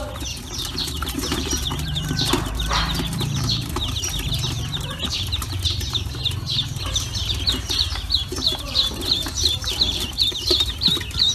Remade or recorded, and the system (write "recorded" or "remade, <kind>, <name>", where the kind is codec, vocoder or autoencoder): remade, vocoder, BigVGAN v2